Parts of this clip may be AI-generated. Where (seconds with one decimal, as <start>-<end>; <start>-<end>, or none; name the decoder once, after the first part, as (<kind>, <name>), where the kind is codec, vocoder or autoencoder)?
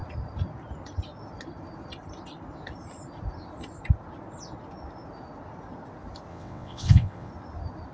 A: 6.3-7.3 (vocoder, WaveNeXt)